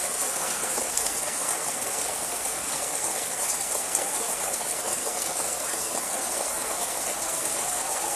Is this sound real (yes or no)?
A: no